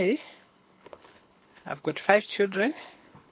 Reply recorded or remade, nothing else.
remade